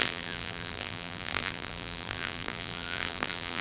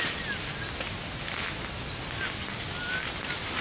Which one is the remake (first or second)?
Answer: first